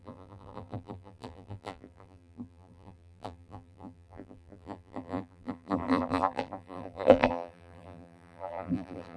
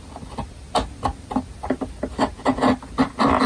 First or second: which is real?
second